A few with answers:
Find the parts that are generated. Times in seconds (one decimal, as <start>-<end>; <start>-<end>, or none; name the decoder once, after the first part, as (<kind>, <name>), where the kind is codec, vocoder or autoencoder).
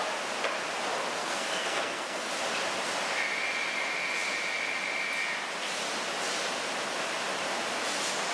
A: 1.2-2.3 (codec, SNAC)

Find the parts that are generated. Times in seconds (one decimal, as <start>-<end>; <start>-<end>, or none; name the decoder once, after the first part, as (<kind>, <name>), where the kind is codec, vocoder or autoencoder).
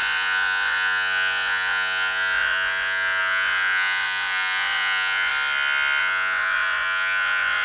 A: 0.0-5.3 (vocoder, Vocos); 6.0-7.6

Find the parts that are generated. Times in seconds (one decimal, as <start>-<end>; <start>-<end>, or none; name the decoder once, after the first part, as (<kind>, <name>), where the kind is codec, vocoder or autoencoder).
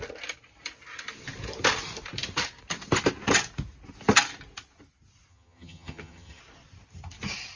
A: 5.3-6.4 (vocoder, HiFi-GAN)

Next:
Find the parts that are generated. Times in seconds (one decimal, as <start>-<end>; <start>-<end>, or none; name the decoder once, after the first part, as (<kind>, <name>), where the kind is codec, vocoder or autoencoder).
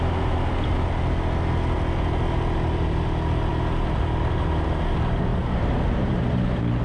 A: 5.3-6.2 (vocoder, BigVGAN v2)